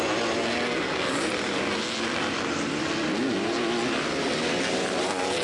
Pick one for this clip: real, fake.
real